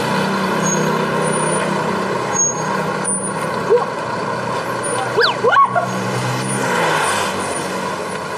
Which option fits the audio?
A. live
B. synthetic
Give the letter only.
A